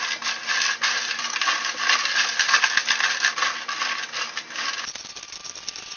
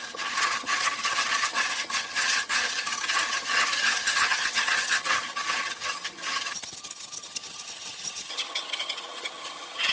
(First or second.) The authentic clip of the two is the first